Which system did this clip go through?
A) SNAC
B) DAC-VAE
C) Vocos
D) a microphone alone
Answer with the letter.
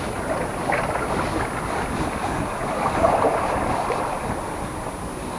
D